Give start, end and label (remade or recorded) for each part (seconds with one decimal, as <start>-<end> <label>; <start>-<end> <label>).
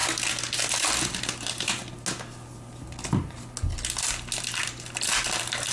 0.0-5.7 recorded